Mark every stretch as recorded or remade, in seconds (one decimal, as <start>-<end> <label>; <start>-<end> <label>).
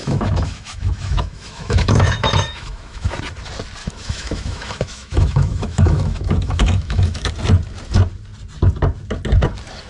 0.0-3.1 remade; 3.1-3.8 recorded; 3.8-7.3 remade; 7.3-9.9 recorded